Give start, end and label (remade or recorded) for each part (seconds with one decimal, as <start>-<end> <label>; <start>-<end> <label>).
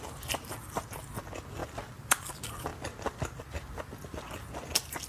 0.0-1.6 recorded; 1.6-2.2 remade; 2.2-2.7 recorded; 2.7-3.4 remade; 3.4-5.1 recorded